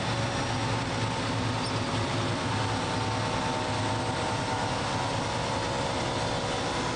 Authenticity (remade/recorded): recorded